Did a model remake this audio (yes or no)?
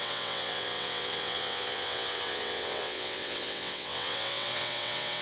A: yes